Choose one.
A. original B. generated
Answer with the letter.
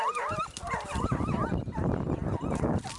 A